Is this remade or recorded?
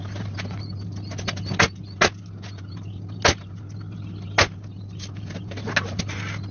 recorded